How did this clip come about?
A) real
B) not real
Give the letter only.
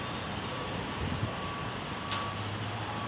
A